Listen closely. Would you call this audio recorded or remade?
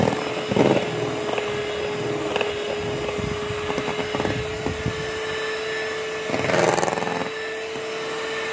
recorded